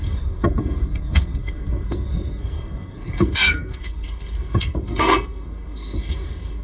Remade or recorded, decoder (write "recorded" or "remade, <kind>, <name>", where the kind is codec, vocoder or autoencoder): remade, codec, SNAC